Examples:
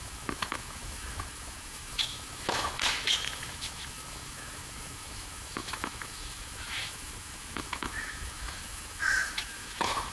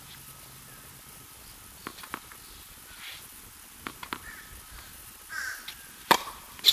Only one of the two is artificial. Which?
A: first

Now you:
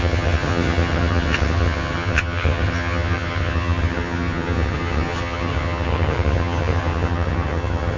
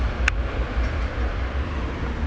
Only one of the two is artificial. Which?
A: first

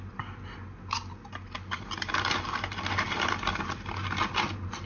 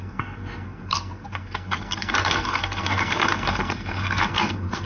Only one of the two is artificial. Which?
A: second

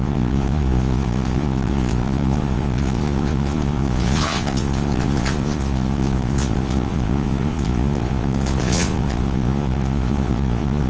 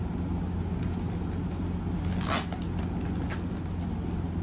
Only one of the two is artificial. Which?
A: first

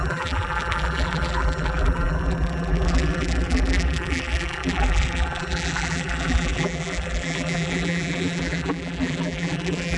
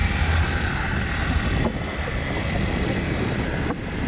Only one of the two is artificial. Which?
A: first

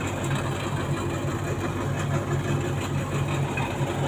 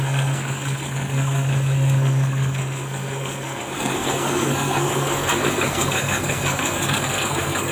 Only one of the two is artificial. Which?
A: second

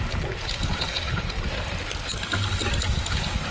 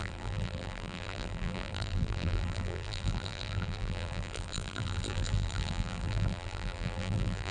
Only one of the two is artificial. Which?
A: second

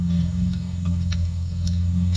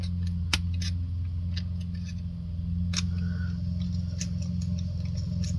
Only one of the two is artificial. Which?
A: first